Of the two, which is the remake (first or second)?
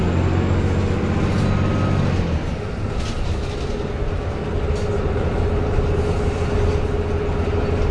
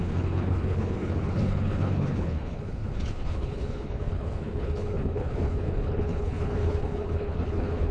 second